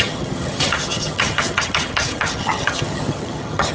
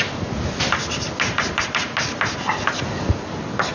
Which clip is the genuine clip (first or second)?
second